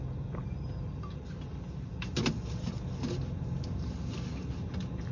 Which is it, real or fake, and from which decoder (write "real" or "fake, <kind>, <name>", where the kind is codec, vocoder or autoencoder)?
real